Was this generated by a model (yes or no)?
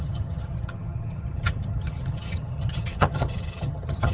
yes